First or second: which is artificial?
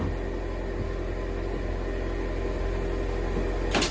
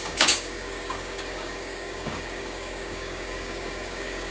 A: second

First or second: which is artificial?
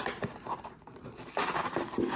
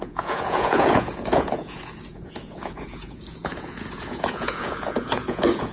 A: second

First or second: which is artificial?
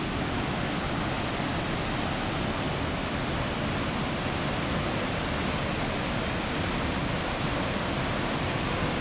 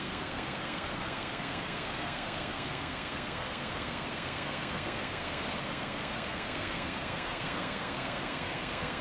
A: second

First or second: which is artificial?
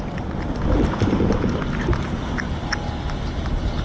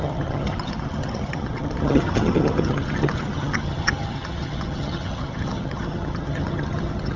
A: second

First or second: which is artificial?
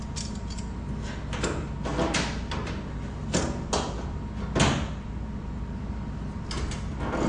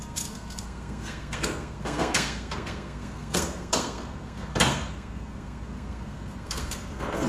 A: second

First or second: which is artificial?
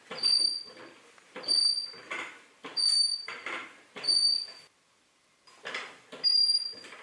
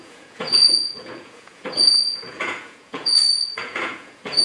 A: second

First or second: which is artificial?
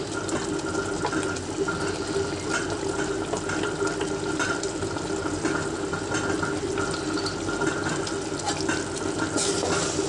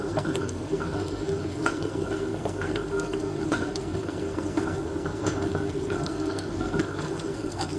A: second